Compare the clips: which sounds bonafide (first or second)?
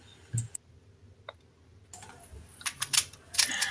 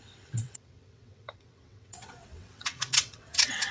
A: first